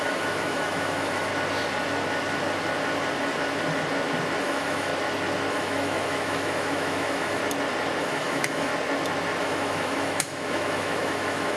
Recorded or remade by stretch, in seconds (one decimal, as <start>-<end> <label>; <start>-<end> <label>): 0.0-1.3 remade; 1.3-4.4 recorded; 4.4-4.9 remade; 4.9-5.5 recorded; 5.5-7.4 remade; 7.4-8.0 recorded; 8.0-8.7 remade; 8.7-9.4 recorded; 9.4-11.6 remade